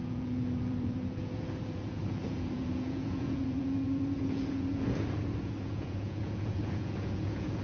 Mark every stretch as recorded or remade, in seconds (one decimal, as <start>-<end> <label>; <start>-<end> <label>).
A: 0.0-7.6 remade